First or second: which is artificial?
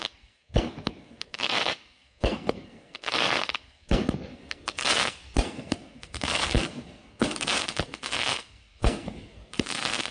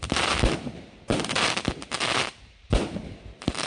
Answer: first